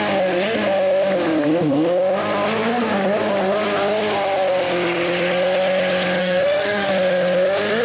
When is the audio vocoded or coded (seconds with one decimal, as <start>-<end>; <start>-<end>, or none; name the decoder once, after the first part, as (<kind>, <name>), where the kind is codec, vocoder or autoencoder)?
6.2-6.9 (autoencoder, DAC-VAE)